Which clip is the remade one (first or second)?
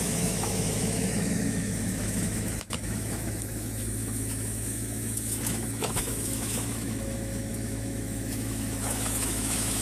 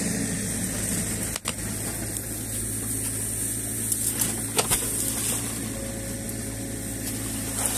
first